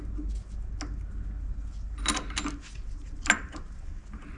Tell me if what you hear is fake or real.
real